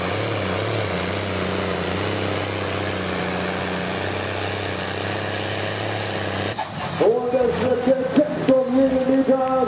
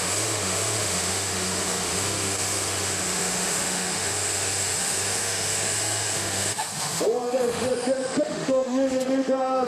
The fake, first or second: second